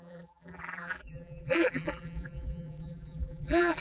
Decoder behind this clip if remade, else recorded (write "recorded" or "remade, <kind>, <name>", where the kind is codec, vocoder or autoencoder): remade, vocoder, BigVGAN v2